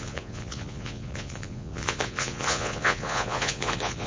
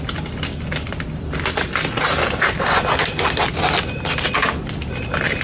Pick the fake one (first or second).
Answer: first